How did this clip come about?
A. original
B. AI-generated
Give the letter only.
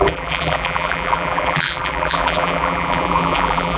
B